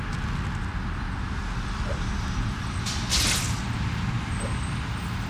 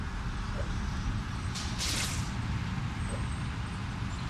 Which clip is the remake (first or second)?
second